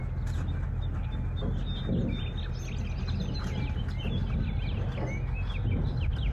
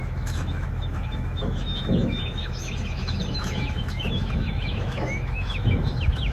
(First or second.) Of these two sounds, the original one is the first